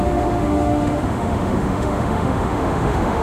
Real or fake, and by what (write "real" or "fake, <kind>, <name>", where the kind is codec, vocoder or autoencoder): fake, autoencoder, DAC-VAE